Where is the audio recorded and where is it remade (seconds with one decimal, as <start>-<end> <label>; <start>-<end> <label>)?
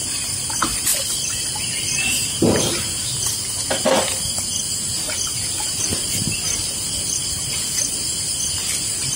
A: 0.0-0.9 remade; 0.9-5.8 recorded; 5.8-9.2 remade